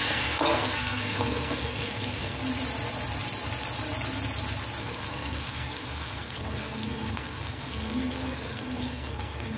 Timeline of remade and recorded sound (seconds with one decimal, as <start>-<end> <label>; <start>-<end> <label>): 0.0-2.4 remade; 2.4-4.8 recorded; 4.8-9.6 remade